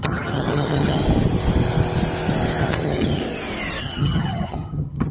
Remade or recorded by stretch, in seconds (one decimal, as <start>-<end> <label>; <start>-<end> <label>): 0.0-1.0 remade; 1.0-2.6 recorded; 2.6-3.2 remade; 3.2-3.8 recorded; 3.8-5.1 remade